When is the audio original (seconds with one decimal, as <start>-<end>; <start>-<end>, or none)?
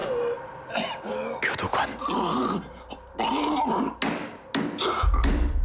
0.0-5.6